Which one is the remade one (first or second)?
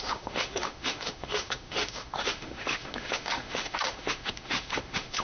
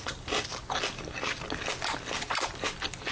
first